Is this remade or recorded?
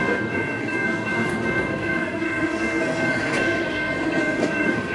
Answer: remade